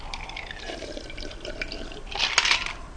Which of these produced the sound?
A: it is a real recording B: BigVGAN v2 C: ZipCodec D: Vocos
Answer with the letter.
B